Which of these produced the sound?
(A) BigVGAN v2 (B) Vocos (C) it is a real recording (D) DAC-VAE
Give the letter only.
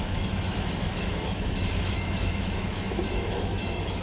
D